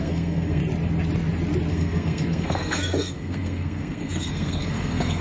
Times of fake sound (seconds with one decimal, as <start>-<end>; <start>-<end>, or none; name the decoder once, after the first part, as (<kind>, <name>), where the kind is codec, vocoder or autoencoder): 0.0-0.6 (codec, SNAC); 1.7-5.2

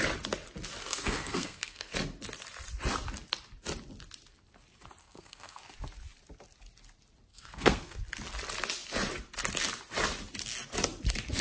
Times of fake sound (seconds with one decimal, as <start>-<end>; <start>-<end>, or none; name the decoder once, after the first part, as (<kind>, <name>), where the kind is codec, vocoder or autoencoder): 0.8-1.9 (codec, SNAC); 5.0-5.6; 7.3-8.0

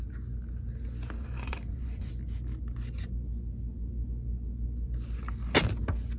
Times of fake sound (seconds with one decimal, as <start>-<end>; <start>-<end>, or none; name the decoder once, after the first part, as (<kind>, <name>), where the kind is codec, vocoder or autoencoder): 1.2-2.1 (vocoder, Vocos)